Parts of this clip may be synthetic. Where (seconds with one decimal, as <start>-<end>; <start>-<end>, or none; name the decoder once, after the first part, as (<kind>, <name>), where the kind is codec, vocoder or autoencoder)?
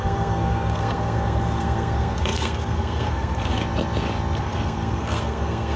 0.0-3.6 (codec, SNAC); 4.4-5.8